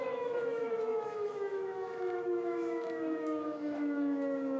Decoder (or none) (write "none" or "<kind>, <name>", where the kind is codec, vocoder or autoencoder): autoencoder, DAC-VAE